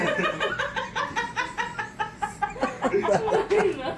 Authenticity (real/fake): real